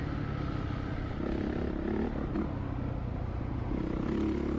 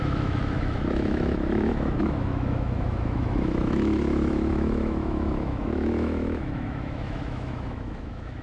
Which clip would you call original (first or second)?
first